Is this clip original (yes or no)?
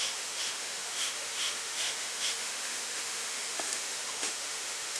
no